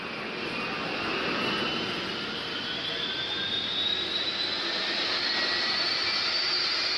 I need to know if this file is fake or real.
real